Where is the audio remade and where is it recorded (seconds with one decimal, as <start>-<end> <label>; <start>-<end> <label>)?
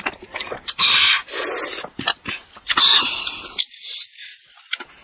0.0-5.0 recorded